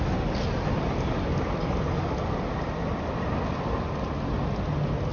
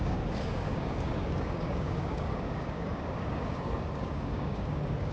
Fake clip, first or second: second